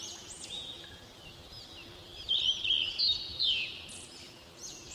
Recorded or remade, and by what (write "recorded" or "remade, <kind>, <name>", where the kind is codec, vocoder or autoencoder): recorded